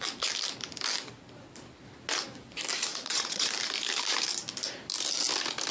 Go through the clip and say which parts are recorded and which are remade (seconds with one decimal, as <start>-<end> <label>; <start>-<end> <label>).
0.0-2.9 recorded; 2.9-3.5 remade; 3.5-5.7 recorded